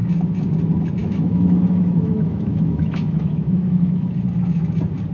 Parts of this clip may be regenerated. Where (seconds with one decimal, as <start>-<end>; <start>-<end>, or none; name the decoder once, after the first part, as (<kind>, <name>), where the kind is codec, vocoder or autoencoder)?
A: 1.0-4.1 (autoencoder, DAC-VAE)